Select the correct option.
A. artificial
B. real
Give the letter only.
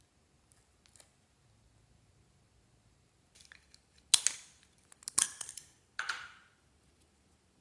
B